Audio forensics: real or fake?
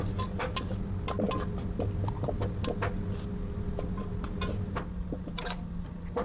real